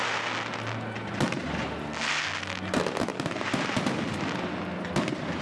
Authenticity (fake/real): real